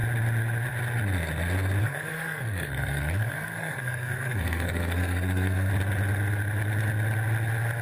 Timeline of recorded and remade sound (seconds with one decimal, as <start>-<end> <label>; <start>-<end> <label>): 0.0-1.8 recorded; 1.8-5.7 remade; 5.7-7.8 recorded